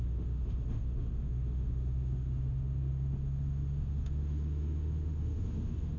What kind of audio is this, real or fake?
fake